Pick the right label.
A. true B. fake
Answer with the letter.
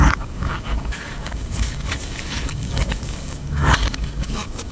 B